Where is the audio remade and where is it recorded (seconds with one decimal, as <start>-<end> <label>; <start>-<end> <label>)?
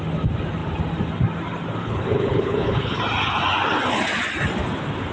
0.0-1.8 recorded; 1.8-3.0 remade; 3.0-5.1 recorded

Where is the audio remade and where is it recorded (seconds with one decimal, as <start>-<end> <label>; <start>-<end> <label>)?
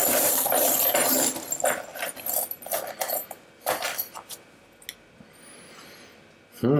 0.0-1.3 remade; 1.3-1.9 recorded; 1.9-3.6 remade; 3.6-6.8 recorded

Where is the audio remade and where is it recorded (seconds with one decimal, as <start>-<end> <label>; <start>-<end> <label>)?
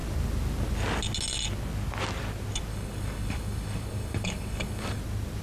0.0-2.7 recorded; 2.7-5.0 remade; 5.0-5.4 recorded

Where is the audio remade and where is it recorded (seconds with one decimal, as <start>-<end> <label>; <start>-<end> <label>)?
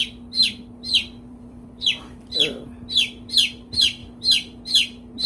0.0-1.0 recorded; 1.0-2.5 remade; 2.5-5.3 recorded